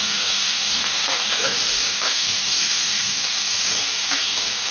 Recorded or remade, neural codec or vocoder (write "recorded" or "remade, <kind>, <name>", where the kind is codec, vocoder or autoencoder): remade, codec, DAC